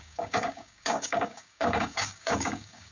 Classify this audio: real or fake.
fake